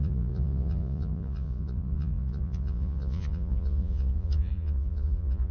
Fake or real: fake